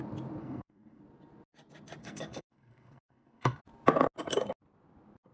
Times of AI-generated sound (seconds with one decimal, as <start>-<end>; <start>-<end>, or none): 0.4-1.0; 2.0-3.6